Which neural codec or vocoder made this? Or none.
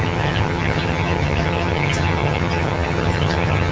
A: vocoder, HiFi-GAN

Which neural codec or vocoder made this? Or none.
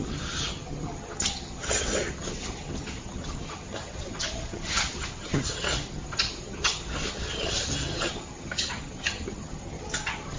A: vocoder, HiFi-GAN